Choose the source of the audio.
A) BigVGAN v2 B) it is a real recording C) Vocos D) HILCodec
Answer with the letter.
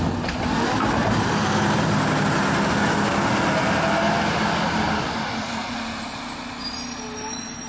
B